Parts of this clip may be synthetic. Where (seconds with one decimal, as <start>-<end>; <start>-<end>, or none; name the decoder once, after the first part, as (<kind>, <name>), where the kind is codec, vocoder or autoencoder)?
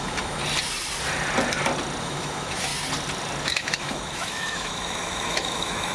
0.0-0.4 (autoencoder, DAC-VAE); 2.0-2.7; 3.4-5.9